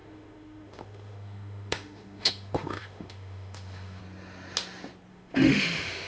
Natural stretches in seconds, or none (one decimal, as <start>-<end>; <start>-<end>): 4.0-5.1